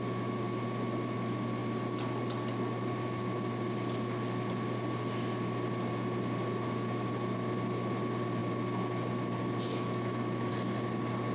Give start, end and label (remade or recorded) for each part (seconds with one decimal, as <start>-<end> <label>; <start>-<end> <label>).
0.0-9.7 recorded; 9.7-10.5 remade; 10.5-11.3 recorded